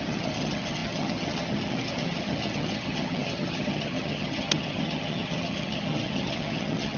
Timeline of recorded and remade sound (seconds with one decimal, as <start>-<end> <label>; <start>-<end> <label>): 0.0-7.0 remade